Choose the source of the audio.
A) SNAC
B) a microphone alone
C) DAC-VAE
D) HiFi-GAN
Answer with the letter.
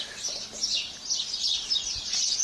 B